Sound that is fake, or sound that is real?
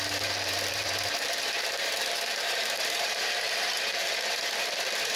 fake